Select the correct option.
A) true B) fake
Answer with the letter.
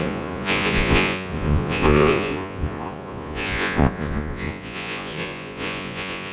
B